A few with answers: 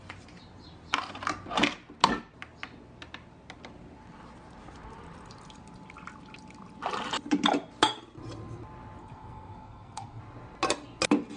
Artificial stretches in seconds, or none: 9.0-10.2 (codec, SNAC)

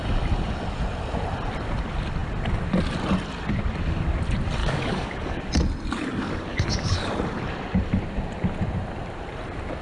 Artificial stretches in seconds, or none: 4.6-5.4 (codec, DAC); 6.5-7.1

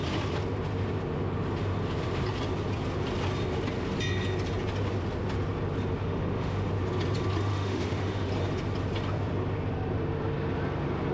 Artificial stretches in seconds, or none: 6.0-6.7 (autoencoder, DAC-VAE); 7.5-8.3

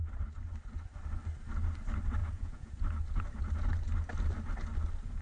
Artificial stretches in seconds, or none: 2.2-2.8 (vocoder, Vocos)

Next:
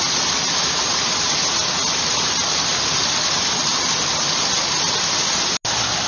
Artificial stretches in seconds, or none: 2.7-4.6 (vocoder, BigVGAN v2)

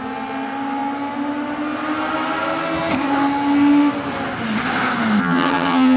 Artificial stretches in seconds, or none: 5.2-6.0 (vocoder, HiFi-GAN)